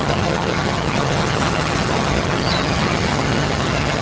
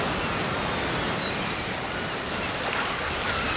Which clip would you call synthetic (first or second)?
first